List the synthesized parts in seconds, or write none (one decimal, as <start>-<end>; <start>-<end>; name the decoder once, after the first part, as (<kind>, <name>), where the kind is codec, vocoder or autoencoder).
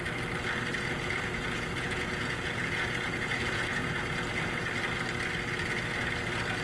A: 0.7-4.7 (vocoder, Vocos)